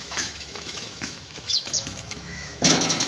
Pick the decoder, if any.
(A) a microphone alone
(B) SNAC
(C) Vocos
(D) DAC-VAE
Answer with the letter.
D